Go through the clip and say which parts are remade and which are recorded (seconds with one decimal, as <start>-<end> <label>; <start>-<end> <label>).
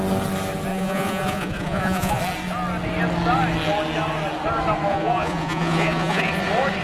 0.0-0.7 recorded; 0.7-2.2 remade; 2.2-4.9 recorded; 4.9-6.3 remade; 6.3-6.8 recorded